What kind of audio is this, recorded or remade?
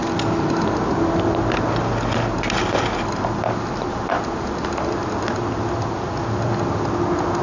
recorded